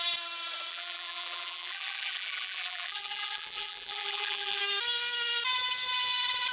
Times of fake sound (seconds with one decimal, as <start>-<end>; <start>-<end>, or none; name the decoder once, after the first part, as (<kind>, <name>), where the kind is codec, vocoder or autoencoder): 0.7-4.6 (vocoder, BigVGAN v2)